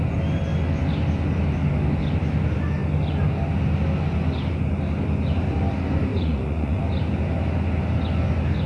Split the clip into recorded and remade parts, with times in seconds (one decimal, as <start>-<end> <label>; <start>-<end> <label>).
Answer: 0.0-6.1 recorded; 6.1-6.8 remade; 6.8-8.7 recorded